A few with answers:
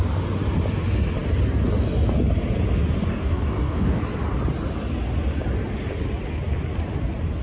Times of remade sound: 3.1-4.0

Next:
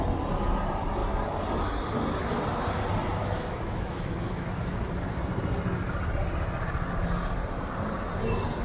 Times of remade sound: 3.2-4.9

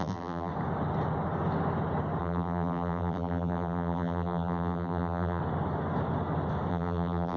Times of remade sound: 0.0-0.5; 2.2-5.4; 6.7-7.4

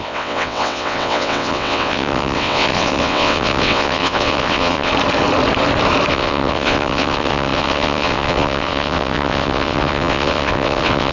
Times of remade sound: 0.0-4.9; 6.1-11.1

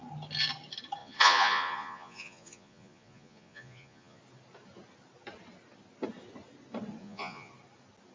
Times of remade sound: 1.0-4.2; 7.0-7.5

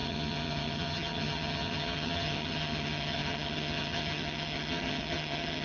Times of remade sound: 0.0-5.6

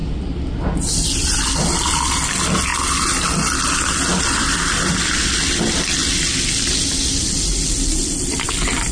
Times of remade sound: none

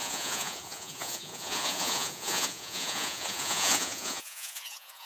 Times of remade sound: 0.0-5.1